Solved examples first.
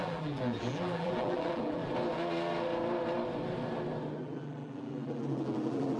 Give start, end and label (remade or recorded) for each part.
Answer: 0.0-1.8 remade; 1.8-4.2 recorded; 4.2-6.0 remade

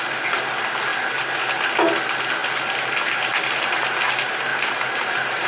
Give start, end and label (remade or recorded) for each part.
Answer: 0.0-4.5 recorded; 4.5-5.5 remade

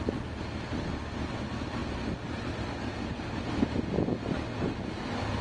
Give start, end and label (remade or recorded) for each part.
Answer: 0.0-5.4 recorded

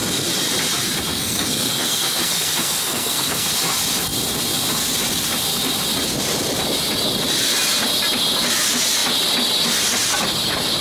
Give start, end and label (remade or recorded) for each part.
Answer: 0.0-1.1 recorded; 1.1-3.5 remade; 3.5-10.8 recorded

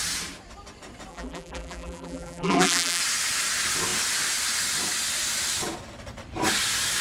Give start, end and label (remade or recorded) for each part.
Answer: 0.0-1.1 recorded; 1.1-3.0 remade; 3.0-7.0 recorded

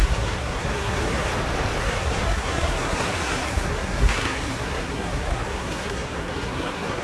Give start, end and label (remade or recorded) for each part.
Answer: 0.0-1.3 remade; 1.3-1.8 recorded; 1.8-7.0 remade